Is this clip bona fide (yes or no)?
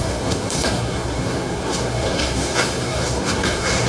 no